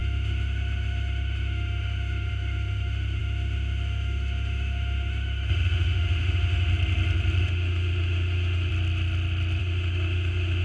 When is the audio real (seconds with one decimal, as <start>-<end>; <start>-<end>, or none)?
6.7-7.4; 8.7-9.6